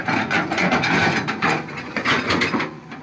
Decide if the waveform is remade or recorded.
remade